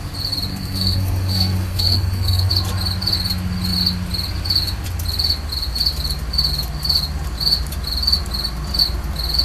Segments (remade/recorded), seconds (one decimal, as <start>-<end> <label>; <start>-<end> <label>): 0.0-0.5 recorded; 0.5-2.5 remade; 2.5-9.4 recorded